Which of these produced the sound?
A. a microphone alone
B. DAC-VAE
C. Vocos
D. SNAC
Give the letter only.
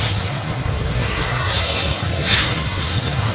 D